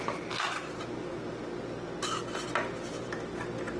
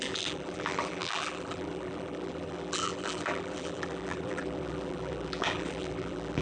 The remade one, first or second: second